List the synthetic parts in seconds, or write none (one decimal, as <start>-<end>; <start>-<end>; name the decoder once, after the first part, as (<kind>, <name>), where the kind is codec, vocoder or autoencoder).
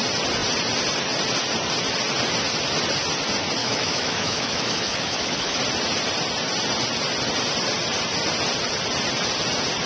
3.6-5.6 (autoencoder, DAC-VAE)